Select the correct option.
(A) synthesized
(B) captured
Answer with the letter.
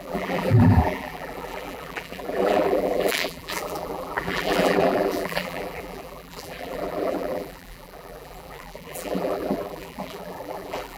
A